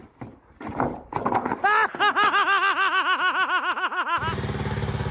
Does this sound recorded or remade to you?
recorded